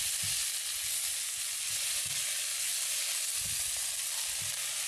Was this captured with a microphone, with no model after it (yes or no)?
yes